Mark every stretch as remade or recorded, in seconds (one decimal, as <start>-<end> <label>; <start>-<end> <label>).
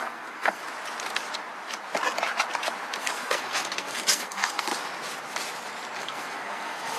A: 0.0-0.6 remade; 0.6-3.0 recorded; 3.0-4.7 remade; 4.7-6.0 recorded; 6.0-7.0 remade